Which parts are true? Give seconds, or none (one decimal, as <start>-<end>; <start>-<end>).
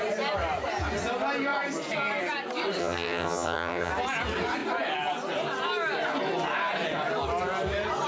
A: 0.0-2.8; 3.9-8.1